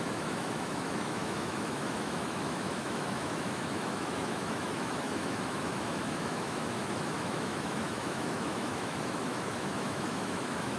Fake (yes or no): yes